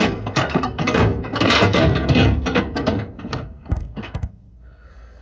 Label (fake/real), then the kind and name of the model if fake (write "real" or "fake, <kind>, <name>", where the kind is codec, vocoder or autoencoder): fake, codec, SNAC